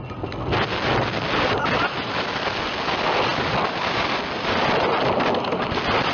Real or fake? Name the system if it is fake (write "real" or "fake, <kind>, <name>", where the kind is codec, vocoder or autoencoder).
real